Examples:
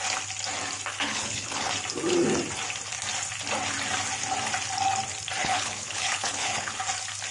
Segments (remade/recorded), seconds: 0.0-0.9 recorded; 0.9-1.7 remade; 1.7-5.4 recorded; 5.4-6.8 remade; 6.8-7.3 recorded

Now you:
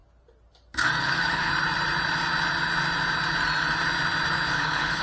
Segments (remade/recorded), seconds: 0.0-1.0 recorded; 1.0-1.5 remade; 1.5-4.5 recorded; 4.5-5.0 remade

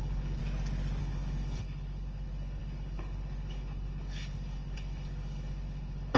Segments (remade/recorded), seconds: 0.0-0.4 remade; 0.4-1.0 recorded; 1.0-6.2 remade

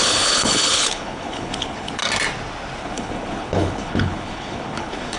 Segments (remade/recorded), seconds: 0.0-2.0 remade; 2.0-2.8 recorded; 2.8-5.2 remade

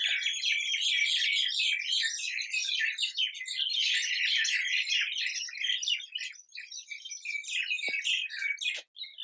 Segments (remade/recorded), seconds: 0.0-9.2 recorded